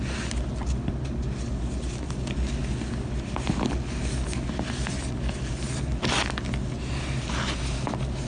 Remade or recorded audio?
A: recorded